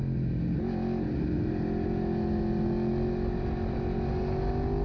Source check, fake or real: real